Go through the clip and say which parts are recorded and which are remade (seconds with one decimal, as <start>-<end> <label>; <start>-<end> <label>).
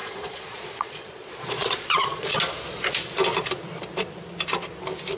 0.0-2.4 remade; 2.4-5.2 recorded